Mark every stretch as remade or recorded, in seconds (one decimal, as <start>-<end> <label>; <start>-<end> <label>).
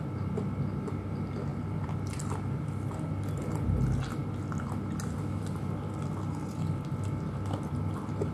0.0-8.3 recorded